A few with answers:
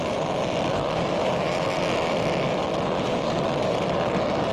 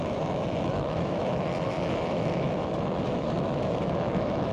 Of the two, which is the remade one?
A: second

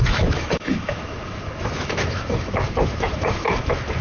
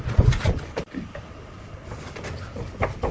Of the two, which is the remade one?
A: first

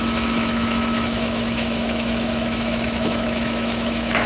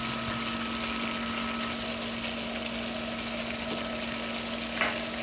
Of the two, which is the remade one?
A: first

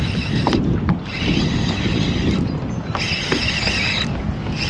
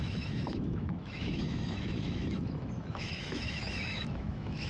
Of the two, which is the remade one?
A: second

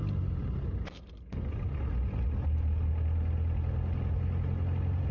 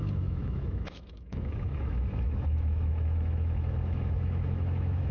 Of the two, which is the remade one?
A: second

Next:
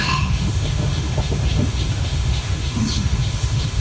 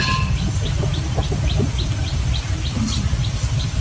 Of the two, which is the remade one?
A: first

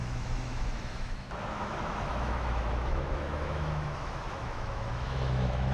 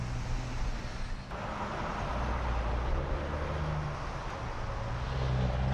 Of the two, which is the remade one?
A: first